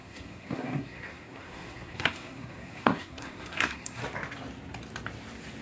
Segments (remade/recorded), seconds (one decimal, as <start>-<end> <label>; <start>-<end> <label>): 0.0-4.0 remade; 4.0-5.6 recorded